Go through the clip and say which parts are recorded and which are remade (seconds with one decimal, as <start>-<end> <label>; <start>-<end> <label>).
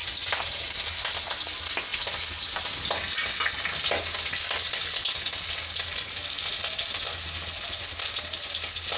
0.0-9.0 recorded